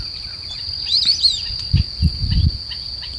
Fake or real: real